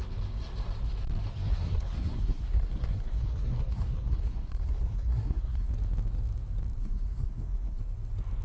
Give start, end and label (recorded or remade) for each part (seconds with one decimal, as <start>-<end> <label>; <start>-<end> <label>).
0.0-1.3 recorded; 1.3-5.7 remade; 5.7-6.8 recorded; 6.8-7.8 remade; 7.8-8.4 recorded